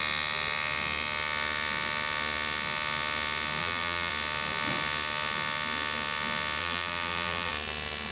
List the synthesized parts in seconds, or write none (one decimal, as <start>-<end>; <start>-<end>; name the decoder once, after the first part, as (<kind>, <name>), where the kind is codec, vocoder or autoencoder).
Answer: 3.6-4.1 (vocoder, BigVGAN v2); 6.6-7.5

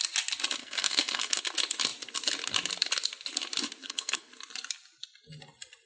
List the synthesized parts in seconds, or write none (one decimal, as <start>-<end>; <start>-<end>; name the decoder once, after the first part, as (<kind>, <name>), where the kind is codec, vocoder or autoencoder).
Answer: 0.6-1.4 (codec, SNAC); 3.8-4.3

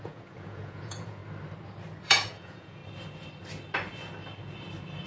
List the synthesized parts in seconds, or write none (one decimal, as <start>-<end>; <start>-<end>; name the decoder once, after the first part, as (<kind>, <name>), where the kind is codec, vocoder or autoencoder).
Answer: 0.0-1.2 (vocoder, Vocos); 2.0-2.8

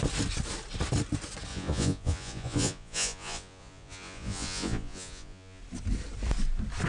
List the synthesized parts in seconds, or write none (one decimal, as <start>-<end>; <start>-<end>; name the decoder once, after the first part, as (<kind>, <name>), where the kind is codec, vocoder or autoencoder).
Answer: 1.5-5.6 (vocoder, Vocos)

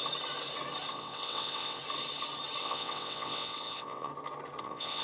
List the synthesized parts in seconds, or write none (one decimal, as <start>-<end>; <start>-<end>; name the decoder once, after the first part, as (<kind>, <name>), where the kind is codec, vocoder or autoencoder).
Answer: 0.9-1.8 (vocoder, WaveNeXt); 2.6-4.1; 4.6-5.0